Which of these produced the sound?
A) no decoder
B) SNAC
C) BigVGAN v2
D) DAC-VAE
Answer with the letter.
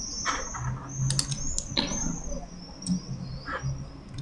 A